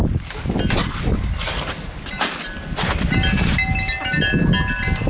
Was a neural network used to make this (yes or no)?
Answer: no